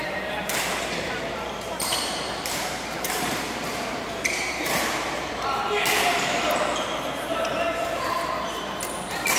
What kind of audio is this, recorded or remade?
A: remade